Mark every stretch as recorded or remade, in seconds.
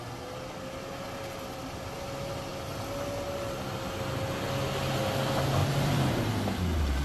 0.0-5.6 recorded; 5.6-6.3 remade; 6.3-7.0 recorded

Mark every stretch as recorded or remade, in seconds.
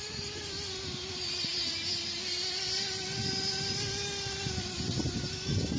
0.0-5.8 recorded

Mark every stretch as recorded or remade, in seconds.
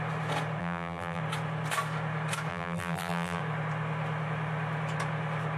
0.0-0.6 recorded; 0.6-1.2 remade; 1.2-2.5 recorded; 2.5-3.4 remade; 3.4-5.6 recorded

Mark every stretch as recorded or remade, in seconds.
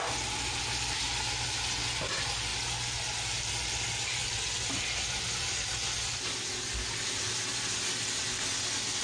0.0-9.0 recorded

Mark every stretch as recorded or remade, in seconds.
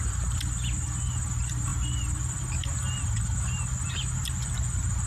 0.0-5.1 recorded